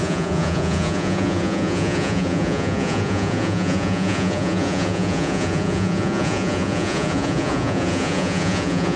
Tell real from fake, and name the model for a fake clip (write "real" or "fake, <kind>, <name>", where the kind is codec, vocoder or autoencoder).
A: fake, vocoder, Vocos